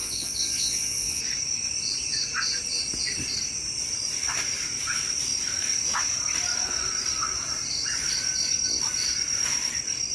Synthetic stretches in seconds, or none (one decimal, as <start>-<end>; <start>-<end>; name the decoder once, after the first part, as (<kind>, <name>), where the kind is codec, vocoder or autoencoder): 0.0-1.2 (vocoder, Vocos)